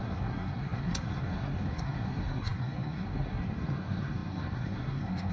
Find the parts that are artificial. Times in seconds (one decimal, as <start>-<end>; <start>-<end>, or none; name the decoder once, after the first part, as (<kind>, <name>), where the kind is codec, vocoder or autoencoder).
0.0-5.3 (codec, SNAC)